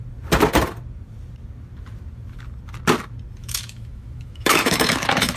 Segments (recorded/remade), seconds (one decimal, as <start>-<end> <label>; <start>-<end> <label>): 0.0-3.4 recorded; 3.4-5.4 remade